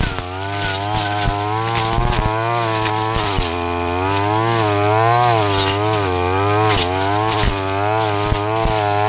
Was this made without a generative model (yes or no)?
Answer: yes